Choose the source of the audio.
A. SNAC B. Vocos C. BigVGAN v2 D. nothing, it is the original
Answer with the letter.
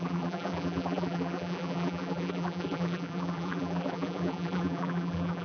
C